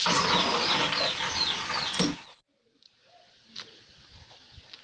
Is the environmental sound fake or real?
real